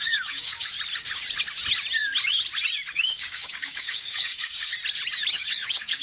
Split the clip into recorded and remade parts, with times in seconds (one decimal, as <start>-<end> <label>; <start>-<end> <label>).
0.0-0.7 remade; 0.7-2.9 recorded; 2.9-4.7 remade; 4.7-5.3 recorded; 5.3-6.0 remade